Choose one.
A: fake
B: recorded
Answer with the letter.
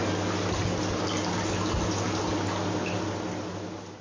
B